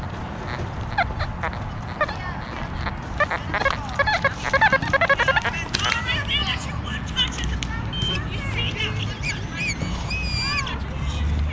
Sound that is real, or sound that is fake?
real